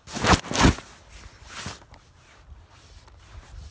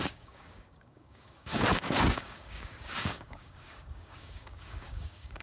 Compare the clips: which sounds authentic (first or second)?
first